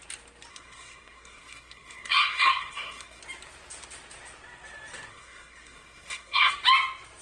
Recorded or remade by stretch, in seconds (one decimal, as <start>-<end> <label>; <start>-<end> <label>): 0.0-0.5 recorded; 0.5-3.2 remade; 3.2-5.1 recorded; 5.1-6.5 remade; 6.5-7.2 recorded